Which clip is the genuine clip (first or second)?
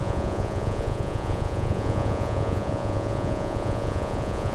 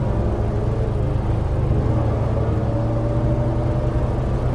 second